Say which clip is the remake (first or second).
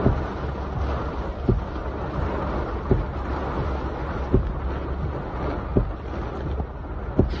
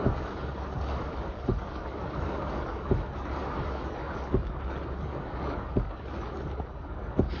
second